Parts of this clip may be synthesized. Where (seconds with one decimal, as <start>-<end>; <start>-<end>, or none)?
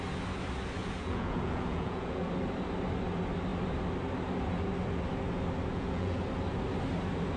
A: 0.8-2.3; 5.7-6.2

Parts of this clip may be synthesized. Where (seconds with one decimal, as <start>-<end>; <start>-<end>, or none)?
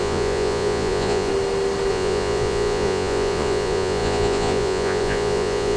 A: 0.0-1.3; 1.9-5.8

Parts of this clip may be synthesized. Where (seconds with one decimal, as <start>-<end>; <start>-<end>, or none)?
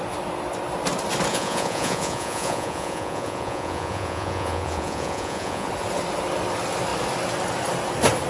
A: 1.3-5.7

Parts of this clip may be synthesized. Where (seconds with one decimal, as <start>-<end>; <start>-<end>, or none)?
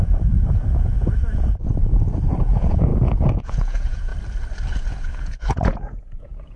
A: 0.0-1.8; 2.4-4.1; 4.7-6.6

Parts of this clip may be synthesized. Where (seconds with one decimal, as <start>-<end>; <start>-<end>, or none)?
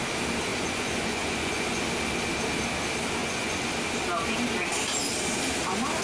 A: 0.5-1.8; 3.2-3.7